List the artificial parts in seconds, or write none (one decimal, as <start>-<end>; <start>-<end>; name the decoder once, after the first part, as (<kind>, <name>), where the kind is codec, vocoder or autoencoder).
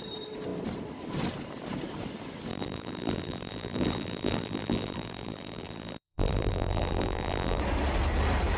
2.5-7.6 (vocoder, BigVGAN v2)